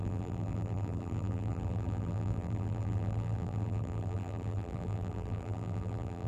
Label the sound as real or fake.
fake